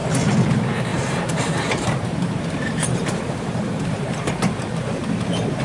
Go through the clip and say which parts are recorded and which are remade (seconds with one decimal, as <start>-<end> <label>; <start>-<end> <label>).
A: 0.0-0.9 recorded; 0.9-4.3 remade; 4.3-5.6 recorded